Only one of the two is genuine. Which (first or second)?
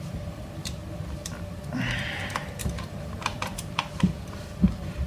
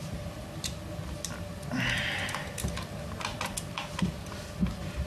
second